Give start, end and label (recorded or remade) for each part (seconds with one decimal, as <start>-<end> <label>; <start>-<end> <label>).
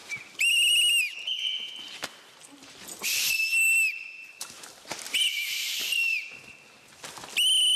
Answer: 0.0-0.8 remade; 0.8-2.0 recorded; 2.0-6.3 remade; 6.3-7.8 recorded